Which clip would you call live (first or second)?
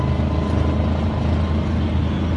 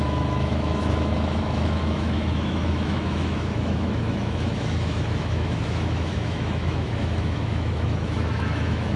first